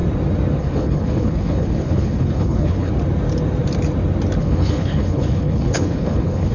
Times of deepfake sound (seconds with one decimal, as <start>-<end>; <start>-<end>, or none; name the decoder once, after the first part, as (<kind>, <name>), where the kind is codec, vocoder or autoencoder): 0.6-2.9 (codec, HILCodec); 4.4-6.5